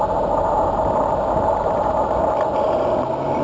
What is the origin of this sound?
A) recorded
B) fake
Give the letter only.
A